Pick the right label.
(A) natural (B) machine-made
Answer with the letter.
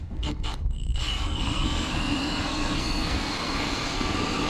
B